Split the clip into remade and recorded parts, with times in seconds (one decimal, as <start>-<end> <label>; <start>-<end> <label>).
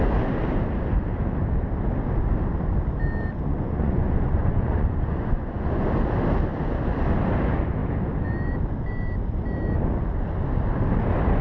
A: 0.0-3.5 recorded; 3.5-5.9 remade; 5.9-11.4 recorded